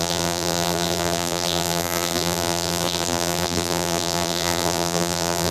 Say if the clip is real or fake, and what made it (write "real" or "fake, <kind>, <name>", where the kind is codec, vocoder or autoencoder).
fake, vocoder, BigVGAN v2